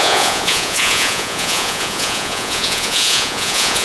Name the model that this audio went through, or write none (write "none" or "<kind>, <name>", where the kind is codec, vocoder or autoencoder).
vocoder, Vocos